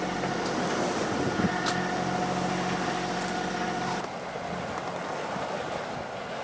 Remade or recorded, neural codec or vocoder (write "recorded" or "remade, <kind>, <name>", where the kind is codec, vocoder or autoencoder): recorded